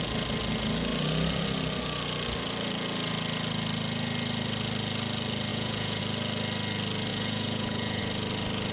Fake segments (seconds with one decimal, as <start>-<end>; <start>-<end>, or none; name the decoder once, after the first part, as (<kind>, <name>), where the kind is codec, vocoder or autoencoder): 5.5-6.0 (vocoder, Vocos); 7.1-8.0